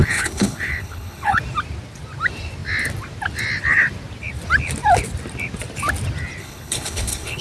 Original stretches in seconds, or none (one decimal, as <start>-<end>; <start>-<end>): 1.4-6.4